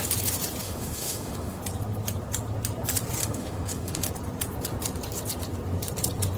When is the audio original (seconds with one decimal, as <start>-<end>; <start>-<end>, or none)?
0.0-0.6; 1.6-3.2; 4.1-6.4